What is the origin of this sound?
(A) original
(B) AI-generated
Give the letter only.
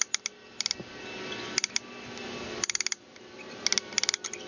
A